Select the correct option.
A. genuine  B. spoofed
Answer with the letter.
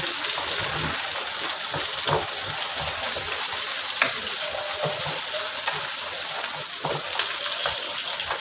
A